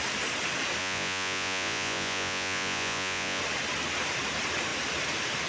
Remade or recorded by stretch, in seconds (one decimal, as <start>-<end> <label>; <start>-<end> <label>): 0.0-0.8 recorded; 0.8-3.4 remade; 3.4-5.5 recorded